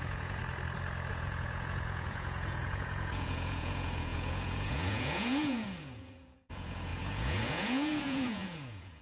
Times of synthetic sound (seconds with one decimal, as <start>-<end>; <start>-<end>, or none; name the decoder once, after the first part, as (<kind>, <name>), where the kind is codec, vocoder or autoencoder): 0.0-0.4 (vocoder, Vocos); 1.1-9.0